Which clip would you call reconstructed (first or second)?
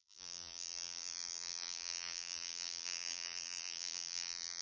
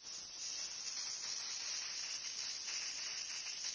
first